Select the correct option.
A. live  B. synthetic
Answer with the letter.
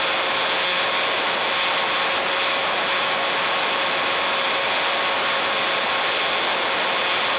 A